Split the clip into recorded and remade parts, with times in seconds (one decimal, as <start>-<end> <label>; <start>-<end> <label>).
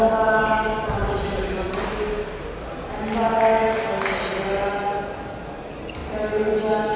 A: 0.0-7.0 recorded